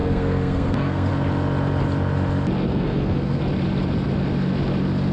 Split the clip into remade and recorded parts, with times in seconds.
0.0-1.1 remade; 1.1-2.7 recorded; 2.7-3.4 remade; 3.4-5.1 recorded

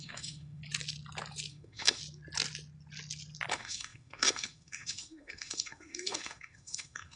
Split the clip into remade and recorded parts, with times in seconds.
0.0-0.6 remade; 0.6-1.5 recorded; 1.5-2.0 remade; 2.0-3.5 recorded; 3.5-7.2 remade